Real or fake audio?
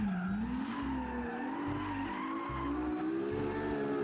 real